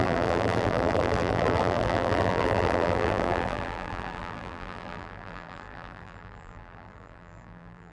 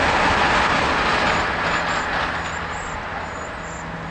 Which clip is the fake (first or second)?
first